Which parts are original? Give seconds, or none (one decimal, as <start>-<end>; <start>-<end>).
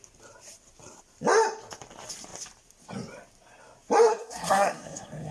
0.0-4.1